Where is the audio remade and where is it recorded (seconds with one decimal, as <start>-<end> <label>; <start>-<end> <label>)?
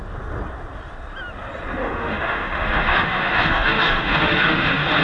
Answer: 0.0-1.8 recorded; 1.8-5.0 remade